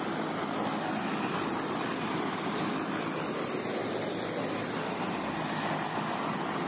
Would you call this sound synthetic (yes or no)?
no